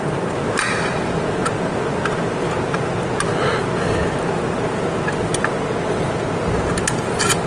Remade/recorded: recorded